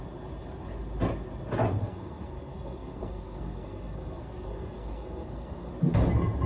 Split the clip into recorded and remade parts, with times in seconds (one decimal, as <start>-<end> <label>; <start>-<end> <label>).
0.0-1.8 recorded; 1.8-5.7 remade; 5.7-6.5 recorded